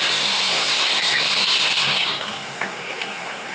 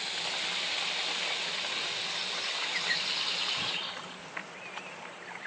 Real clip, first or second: second